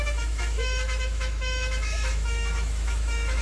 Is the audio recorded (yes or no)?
no